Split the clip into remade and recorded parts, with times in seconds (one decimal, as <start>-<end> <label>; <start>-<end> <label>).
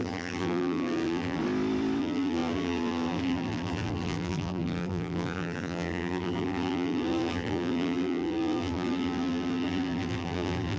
0.0-1.4 remade; 1.4-2.0 recorded; 2.0-10.8 remade